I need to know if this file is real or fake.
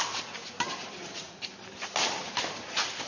real